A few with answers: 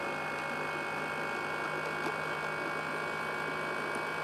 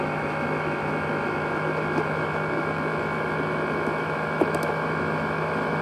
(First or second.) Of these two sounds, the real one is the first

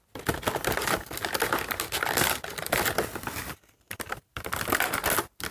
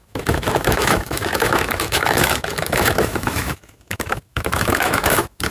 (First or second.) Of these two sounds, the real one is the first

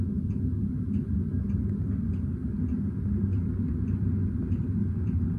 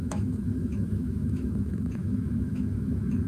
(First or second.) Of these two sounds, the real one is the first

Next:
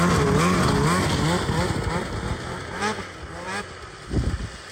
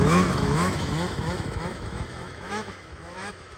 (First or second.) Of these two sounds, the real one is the first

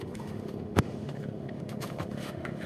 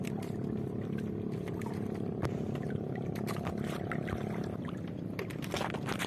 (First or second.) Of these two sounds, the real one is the second